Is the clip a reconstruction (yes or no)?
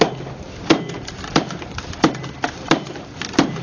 no